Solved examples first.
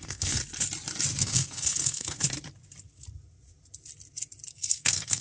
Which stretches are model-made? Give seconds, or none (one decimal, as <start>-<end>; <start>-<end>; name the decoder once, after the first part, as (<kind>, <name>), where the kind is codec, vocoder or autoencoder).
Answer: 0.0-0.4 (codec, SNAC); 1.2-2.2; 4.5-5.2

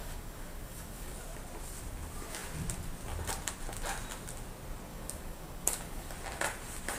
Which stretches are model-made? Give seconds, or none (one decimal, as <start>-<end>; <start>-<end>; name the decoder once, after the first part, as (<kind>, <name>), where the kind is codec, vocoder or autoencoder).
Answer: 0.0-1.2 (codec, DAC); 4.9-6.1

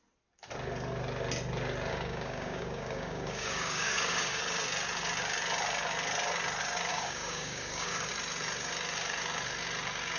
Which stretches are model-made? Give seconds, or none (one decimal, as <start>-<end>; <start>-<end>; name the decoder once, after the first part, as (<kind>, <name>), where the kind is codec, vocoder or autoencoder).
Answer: 1.9-4.4 (codec, DAC); 6.9-8.1

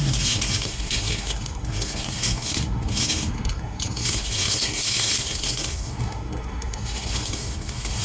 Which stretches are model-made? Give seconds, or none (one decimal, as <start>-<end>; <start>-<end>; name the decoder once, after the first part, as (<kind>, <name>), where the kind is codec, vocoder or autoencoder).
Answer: 0.0-8.0 (codec, SNAC)